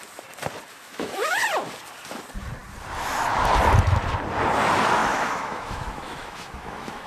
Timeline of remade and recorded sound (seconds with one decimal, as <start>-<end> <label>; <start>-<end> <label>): 0.0-0.7 recorded; 0.7-1.4 remade; 1.4-5.0 recorded; 5.0-7.1 remade